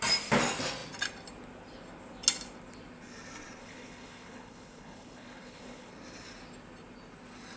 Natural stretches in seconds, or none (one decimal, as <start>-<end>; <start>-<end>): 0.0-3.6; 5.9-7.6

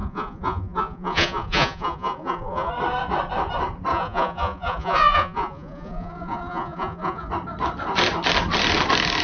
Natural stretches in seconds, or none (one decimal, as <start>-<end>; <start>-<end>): 2.7-3.9; 7.3-9.2

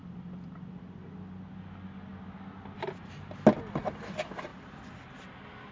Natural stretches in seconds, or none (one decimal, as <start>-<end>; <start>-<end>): 0.0-5.7